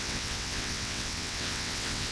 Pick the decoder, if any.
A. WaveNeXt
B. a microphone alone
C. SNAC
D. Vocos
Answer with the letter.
A